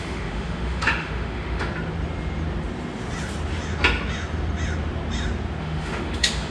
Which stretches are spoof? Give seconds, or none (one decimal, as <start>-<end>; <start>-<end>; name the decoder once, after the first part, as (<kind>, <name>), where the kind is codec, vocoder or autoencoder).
0.0-1.7 (autoencoder, DAC-VAE); 5.6-6.5

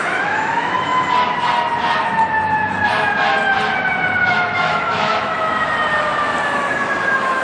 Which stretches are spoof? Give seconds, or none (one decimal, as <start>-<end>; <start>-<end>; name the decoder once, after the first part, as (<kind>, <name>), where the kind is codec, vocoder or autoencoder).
0.0-0.9 (autoencoder, DAC-VAE); 4.3-5.5; 6.8-7.4

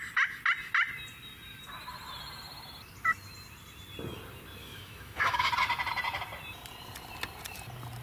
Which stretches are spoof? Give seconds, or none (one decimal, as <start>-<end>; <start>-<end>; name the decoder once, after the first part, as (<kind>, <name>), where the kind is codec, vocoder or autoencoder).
4.6-5.5 (autoencoder, DAC-VAE)

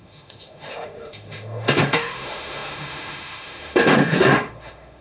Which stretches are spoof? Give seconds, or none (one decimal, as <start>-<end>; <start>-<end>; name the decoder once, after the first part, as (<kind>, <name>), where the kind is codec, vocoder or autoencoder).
0.0-5.0 (autoencoder, DAC-VAE)

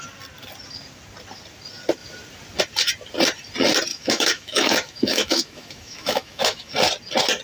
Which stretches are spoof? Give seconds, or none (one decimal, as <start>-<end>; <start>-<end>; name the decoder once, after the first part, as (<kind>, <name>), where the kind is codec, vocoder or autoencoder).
3.9-6.7 (autoencoder, DAC-VAE)

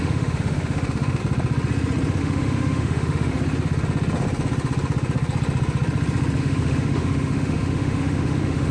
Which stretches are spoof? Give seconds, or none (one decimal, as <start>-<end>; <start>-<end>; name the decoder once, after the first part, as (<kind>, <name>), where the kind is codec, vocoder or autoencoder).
0.0-1.2 (autoencoder, DAC-VAE); 2.2-3.3; 6.4-8.7

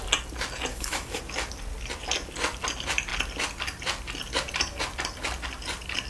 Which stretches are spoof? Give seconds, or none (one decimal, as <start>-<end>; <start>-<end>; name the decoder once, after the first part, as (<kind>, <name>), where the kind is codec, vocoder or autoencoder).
0.7-1.2 (autoencoder, DAC-VAE)